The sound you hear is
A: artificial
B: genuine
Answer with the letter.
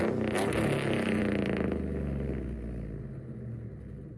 B